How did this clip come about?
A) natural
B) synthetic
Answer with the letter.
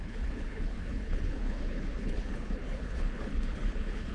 B